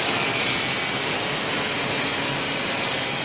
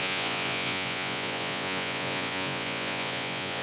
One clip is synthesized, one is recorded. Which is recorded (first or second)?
first